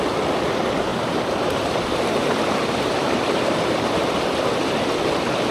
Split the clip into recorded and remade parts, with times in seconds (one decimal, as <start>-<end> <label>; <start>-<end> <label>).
0.0-0.9 recorded; 0.9-4.2 remade; 4.2-5.5 recorded